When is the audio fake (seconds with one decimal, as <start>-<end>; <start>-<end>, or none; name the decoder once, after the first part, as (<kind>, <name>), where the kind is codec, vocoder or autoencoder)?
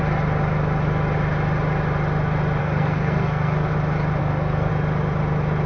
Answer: 2.6-3.7 (codec, SNAC); 4.2-4.7